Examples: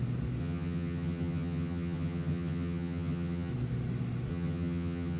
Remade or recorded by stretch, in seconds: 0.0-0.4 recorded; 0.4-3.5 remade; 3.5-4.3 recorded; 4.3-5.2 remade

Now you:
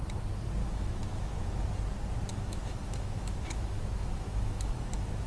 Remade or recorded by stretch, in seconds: 0.0-0.6 recorded; 0.6-1.6 remade; 1.6-2.3 recorded; 2.3-5.3 remade